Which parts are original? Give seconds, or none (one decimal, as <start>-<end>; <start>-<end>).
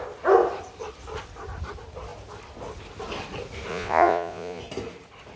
0.0-3.7; 4.6-5.4